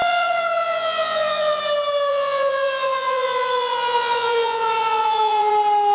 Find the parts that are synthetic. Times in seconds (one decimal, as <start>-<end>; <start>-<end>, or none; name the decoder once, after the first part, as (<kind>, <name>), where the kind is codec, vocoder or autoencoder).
0.0-1.6 (vocoder, Vocos); 2.1-5.5